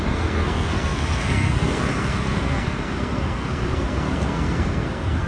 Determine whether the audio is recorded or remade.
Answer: remade